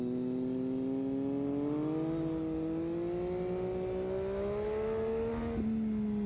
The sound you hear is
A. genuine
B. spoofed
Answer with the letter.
A